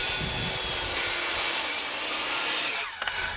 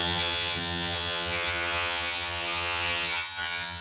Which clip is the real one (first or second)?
first